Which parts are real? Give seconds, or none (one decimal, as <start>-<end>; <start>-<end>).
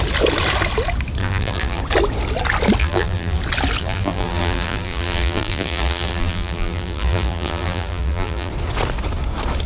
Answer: 0.0-1.2; 1.8-2.8; 3.4-3.8; 8.5-9.7